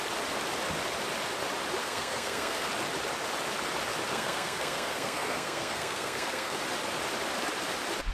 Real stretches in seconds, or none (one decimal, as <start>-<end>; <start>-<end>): 0.0-1.8; 2.7-4.1; 6.6-8.1